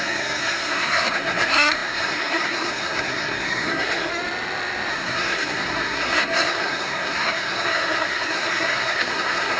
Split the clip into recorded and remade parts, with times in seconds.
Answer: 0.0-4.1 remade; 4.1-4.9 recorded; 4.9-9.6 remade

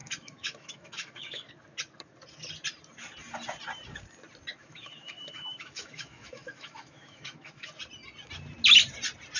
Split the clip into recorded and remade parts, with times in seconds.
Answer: 0.0-1.5 remade; 1.5-4.5 recorded; 4.5-7.7 remade; 7.7-9.4 recorded